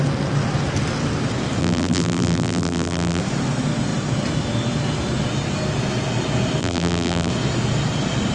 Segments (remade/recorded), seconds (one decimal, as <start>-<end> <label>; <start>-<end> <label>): 0.0-1.6 recorded; 1.6-3.2 remade; 3.2-6.6 recorded; 6.6-7.3 remade; 7.3-8.3 recorded